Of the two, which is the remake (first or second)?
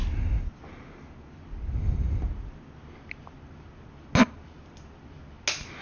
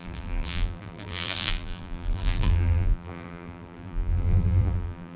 second